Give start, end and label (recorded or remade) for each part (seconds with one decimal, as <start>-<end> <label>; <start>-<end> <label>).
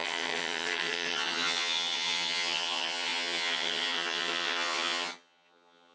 0.0-5.9 remade